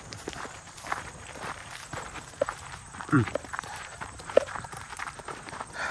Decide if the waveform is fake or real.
fake